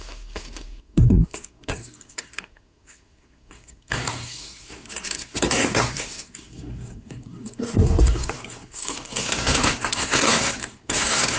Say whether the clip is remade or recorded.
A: remade